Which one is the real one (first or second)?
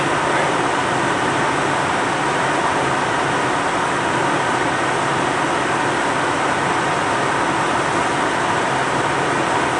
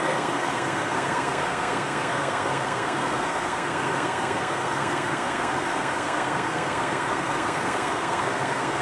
first